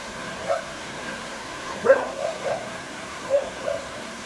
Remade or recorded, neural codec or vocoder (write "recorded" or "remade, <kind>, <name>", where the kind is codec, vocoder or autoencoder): remade, codec, SNAC